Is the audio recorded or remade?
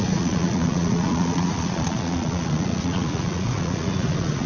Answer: remade